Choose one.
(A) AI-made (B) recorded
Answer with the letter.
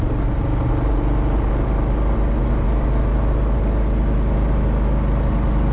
B